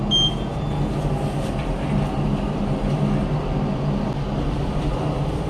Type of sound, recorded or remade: recorded